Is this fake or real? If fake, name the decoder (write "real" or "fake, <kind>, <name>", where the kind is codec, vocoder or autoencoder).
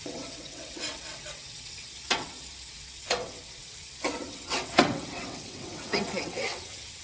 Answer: fake, vocoder, WaveNeXt